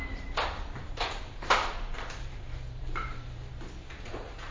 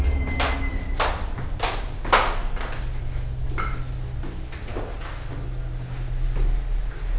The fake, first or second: first